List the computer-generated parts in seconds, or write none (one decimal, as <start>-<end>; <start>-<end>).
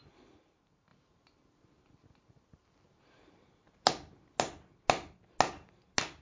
none